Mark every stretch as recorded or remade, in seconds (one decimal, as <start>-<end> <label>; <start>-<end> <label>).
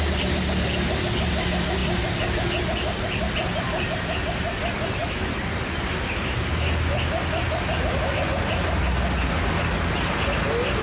0.0-10.8 recorded